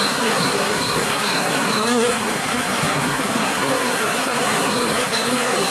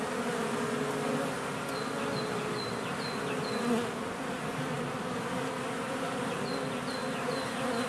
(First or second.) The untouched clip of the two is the second